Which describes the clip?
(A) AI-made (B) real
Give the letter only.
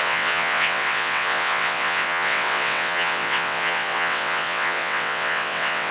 A